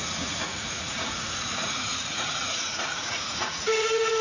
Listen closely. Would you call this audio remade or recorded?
remade